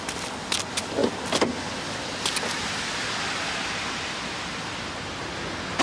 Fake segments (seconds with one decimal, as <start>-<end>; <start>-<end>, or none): none